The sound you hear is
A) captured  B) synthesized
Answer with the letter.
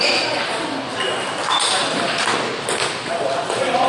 A